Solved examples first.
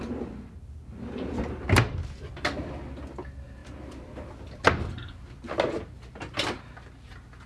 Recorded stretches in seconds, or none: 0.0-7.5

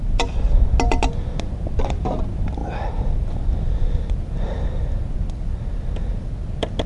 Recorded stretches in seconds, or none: 0.0-6.9

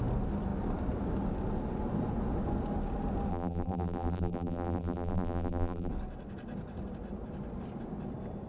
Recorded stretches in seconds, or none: 0.0-3.3; 5.9-8.5

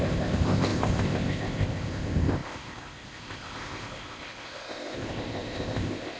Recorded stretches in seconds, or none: none

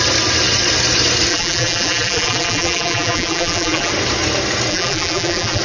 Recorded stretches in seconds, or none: 0.0-1.3; 3.9-4.7